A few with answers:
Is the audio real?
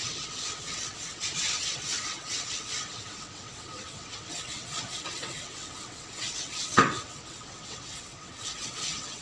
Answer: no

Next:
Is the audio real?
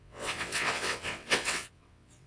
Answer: no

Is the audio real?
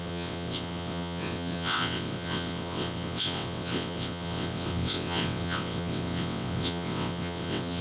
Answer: no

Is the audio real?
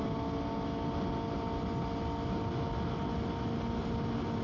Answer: yes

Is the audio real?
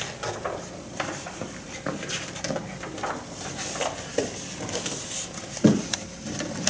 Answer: yes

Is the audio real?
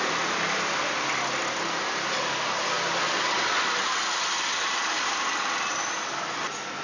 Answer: yes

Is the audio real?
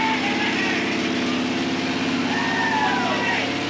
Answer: yes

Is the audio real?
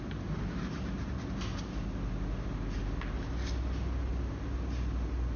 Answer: yes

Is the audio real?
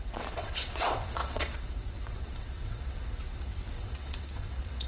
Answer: no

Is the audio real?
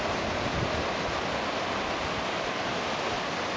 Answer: yes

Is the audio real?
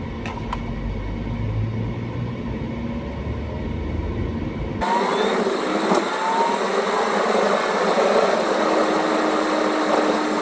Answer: yes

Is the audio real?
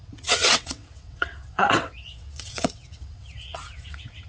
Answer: no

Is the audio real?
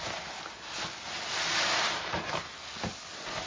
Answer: yes